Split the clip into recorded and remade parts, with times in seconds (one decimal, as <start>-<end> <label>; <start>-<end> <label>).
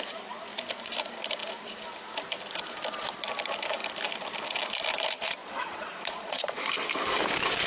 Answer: 0.0-5.4 recorded; 5.4-6.6 remade; 6.6-7.7 recorded